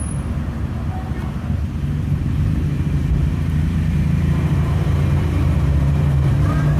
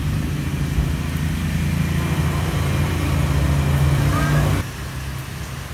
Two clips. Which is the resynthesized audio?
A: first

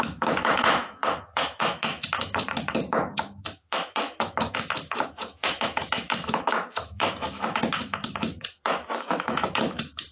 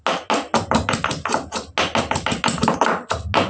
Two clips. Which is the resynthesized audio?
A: first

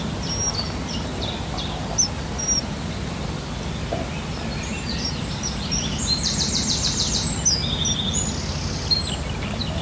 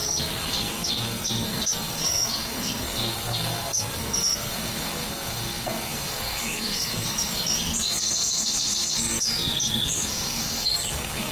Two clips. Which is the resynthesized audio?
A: second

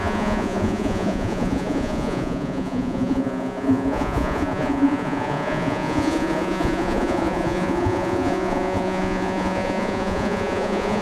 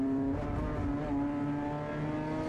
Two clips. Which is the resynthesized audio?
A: first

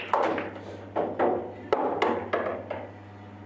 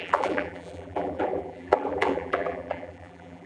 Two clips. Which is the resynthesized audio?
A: second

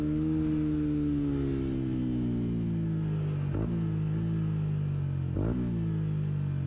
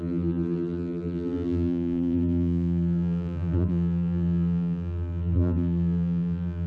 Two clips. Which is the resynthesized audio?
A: second